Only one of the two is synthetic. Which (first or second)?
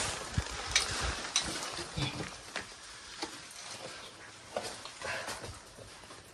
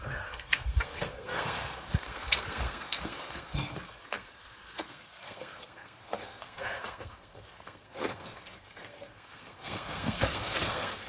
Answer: second